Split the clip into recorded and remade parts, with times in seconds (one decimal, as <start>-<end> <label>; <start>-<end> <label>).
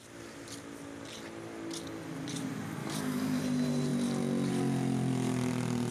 0.0-2.8 recorded; 2.8-3.4 remade; 3.4-5.9 recorded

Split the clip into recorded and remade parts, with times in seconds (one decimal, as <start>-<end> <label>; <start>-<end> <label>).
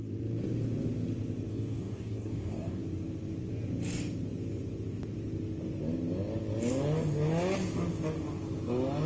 0.0-1.5 recorded; 1.5-2.8 remade; 2.8-9.1 recorded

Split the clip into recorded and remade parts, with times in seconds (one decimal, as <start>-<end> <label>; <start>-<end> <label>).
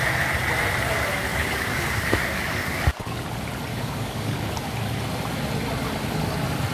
0.0-1.3 recorded; 1.3-3.2 remade; 3.2-3.7 recorded; 3.7-4.5 remade; 4.5-6.7 recorded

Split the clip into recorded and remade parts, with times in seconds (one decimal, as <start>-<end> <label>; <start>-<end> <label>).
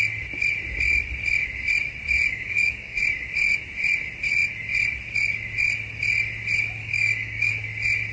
0.0-2.3 recorded; 2.3-3.0 remade; 3.0-6.8 recorded; 6.8-7.5 remade; 7.5-8.1 recorded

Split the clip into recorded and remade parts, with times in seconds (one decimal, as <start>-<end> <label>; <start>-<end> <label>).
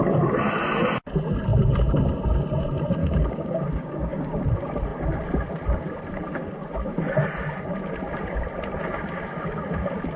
0.0-3.0 recorded; 3.0-4.4 remade; 4.4-10.2 recorded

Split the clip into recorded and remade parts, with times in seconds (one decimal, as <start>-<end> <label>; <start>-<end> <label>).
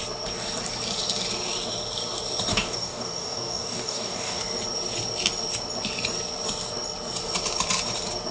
0.0-2.5 recorded; 2.5-4.4 remade; 4.4-8.3 recorded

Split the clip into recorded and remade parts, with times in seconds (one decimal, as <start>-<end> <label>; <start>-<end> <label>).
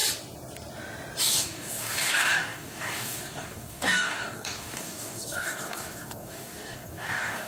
0.0-1.2 recorded; 1.2-7.5 remade